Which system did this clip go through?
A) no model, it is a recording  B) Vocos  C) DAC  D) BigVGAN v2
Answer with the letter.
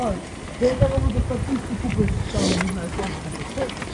A